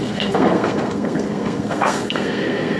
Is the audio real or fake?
fake